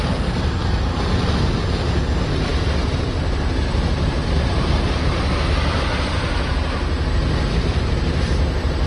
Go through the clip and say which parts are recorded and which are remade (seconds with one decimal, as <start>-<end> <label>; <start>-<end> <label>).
0.0-0.6 recorded; 0.6-2.0 remade; 2.0-8.9 recorded